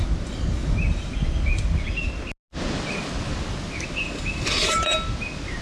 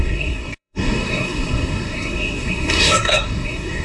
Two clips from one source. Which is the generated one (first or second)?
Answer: second